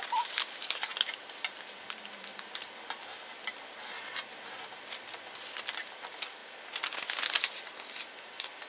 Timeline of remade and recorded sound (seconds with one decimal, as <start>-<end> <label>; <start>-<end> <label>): 0.0-8.7 recorded

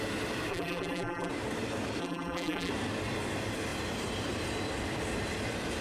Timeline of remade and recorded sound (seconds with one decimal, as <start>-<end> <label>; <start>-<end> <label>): 0.0-0.5 recorded; 0.5-1.3 remade; 1.3-2.0 recorded; 2.0-2.7 remade; 2.7-5.8 recorded

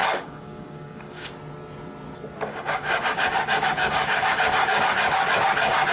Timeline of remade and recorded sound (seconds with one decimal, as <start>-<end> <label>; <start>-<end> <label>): 0.0-1.3 remade; 1.3-2.5 recorded; 2.5-4.8 remade; 4.8-5.9 recorded

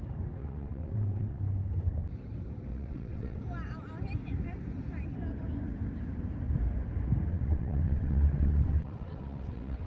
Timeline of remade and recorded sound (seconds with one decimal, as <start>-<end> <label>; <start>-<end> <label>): 0.0-0.4 recorded; 0.4-1.4 remade; 1.4-2.7 recorded; 2.7-3.4 remade; 3.4-7.3 recorded; 7.3-9.9 remade